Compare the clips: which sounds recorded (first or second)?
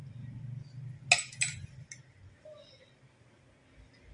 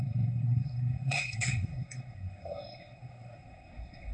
first